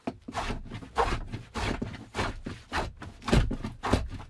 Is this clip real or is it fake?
real